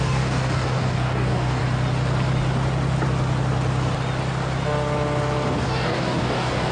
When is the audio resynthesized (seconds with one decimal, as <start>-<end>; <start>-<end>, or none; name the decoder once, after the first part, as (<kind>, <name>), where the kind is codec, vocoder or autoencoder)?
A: 0.0-1.6 (codec, DAC); 5.6-6.7